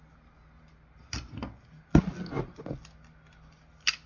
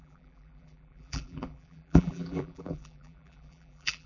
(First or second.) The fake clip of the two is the second